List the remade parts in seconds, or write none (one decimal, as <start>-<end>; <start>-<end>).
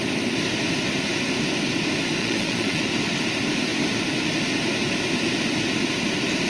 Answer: 2.2-2.8